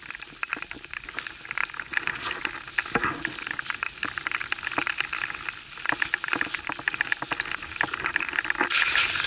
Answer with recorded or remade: recorded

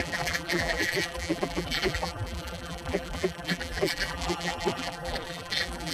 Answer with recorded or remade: remade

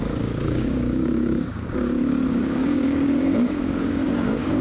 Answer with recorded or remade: remade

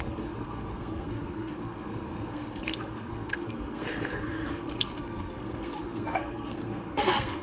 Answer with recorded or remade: remade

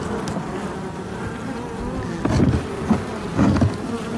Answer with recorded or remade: recorded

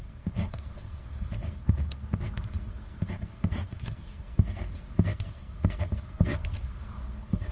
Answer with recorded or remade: remade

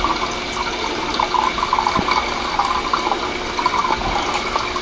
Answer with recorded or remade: recorded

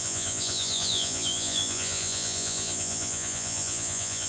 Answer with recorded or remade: remade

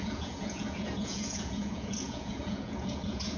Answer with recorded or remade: remade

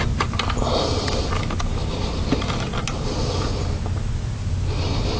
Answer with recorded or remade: recorded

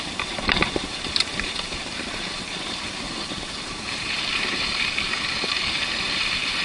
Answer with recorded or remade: remade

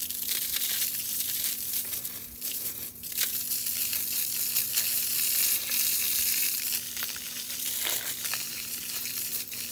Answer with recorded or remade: remade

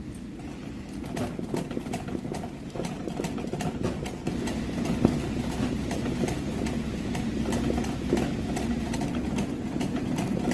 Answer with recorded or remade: recorded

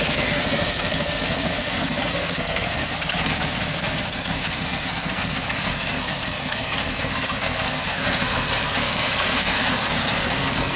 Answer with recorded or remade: remade